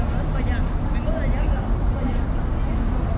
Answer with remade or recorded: recorded